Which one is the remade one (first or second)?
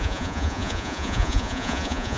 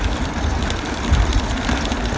first